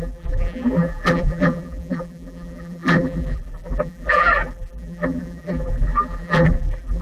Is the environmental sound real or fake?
fake